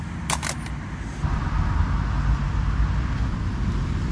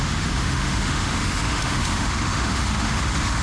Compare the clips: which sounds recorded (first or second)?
first